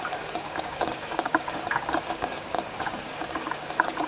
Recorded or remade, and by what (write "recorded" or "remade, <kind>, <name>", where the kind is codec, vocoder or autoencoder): remade, codec, DAC